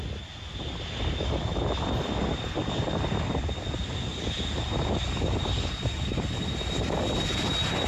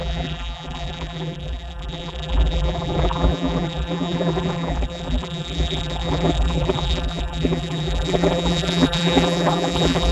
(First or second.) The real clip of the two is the first